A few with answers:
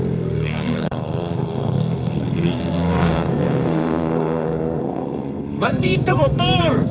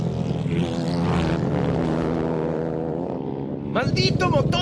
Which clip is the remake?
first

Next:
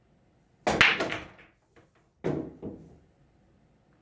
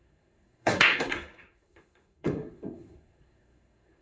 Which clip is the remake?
second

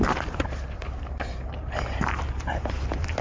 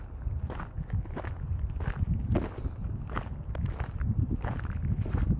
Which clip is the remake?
first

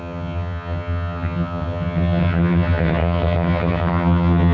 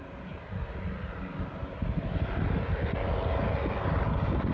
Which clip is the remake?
first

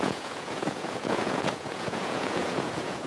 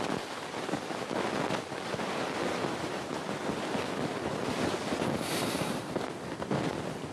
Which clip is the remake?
first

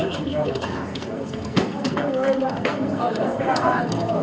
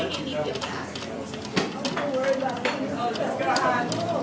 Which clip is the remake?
first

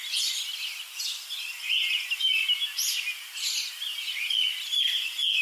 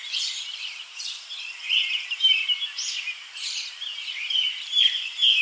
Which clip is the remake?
second